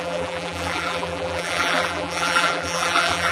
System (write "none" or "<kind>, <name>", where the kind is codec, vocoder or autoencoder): vocoder, BigVGAN v2